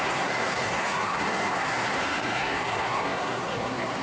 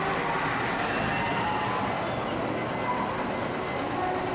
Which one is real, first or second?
second